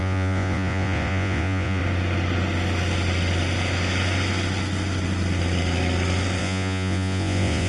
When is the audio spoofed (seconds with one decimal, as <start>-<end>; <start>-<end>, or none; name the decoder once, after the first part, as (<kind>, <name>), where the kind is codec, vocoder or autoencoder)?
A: 0.0-1.8 (vocoder, Vocos); 6.4-7.7